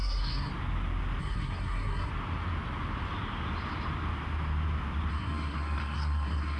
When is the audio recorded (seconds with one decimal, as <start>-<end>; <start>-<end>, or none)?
0.5-1.2; 2.1-5.1